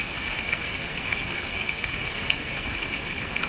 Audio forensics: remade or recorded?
remade